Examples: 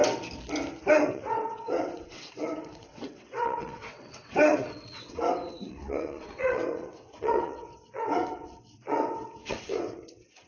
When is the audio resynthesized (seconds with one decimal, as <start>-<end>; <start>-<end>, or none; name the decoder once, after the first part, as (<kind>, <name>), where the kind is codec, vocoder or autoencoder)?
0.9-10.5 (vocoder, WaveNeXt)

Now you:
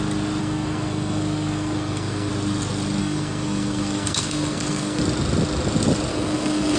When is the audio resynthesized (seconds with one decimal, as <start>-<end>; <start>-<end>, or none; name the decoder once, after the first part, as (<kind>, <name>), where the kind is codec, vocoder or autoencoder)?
0.4-2.3 (codec, SNAC); 3.0-5.0; 6.1-6.8

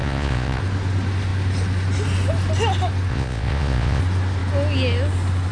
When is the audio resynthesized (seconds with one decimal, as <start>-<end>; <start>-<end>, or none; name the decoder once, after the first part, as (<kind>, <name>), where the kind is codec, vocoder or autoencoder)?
0.0-0.6 (vocoder, Vocos); 3.1-4.0